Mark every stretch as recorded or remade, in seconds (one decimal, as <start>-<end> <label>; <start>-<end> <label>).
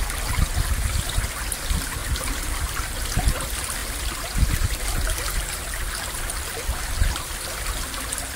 0.0-8.4 recorded